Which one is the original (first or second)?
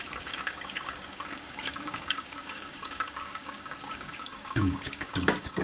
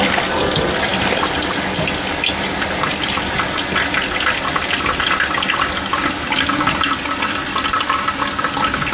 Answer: second